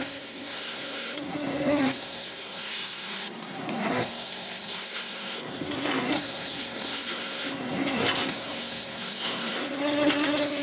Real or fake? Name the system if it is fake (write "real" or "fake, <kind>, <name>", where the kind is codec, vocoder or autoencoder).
fake, codec, SNAC